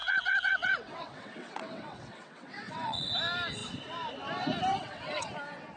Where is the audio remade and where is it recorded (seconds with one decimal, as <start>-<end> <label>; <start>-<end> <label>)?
0.0-3.1 remade; 3.1-4.7 recorded; 4.7-5.3 remade; 5.3-5.8 recorded